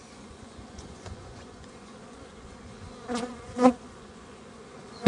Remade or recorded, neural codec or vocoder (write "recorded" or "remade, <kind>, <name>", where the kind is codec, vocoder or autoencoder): remade, vocoder, Vocos